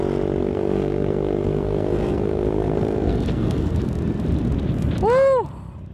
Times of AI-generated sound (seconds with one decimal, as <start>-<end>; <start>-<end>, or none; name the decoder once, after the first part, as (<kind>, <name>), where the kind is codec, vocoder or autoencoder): 0.4-3.9 (codec, SNAC)